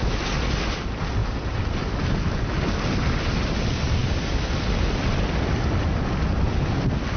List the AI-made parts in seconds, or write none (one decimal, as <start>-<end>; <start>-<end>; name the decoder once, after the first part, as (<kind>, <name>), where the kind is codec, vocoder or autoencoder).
0.0-0.6 (vocoder, BigVGAN v2); 1.2-1.8; 4.0-5.5